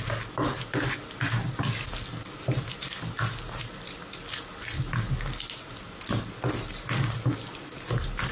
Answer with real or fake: real